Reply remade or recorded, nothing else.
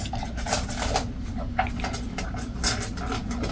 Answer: recorded